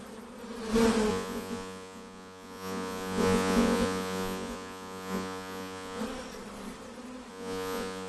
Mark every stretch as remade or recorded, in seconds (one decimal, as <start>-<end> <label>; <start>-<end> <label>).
0.0-1.1 recorded; 1.1-6.0 remade; 6.0-7.3 recorded; 7.3-8.1 remade